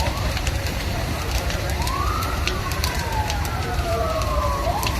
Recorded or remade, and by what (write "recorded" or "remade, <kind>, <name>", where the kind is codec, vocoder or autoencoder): remade, vocoder, BigVGAN v2